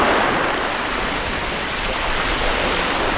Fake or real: real